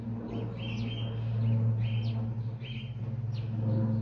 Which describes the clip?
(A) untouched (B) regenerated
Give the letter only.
A